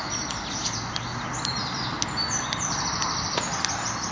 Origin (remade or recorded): recorded